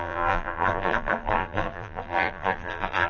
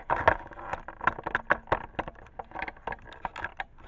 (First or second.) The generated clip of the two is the first